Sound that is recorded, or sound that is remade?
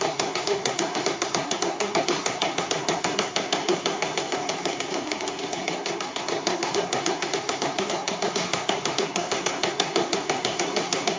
remade